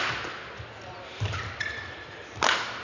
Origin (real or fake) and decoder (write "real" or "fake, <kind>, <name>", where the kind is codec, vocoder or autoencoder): real